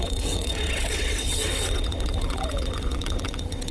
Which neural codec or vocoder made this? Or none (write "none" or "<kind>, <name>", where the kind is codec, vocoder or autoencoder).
vocoder, WaveNeXt